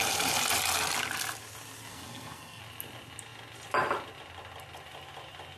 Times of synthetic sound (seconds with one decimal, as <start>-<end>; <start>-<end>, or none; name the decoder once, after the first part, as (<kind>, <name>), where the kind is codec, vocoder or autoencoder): 1.9-2.6 (codec, SNAC)